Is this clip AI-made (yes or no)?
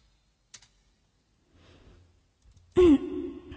no